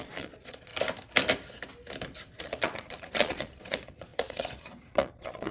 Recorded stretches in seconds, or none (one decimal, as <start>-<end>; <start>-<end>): 0.7-2.4